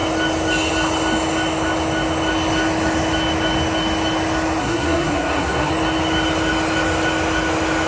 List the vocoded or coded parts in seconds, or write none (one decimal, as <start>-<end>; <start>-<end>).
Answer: 4.6-5.7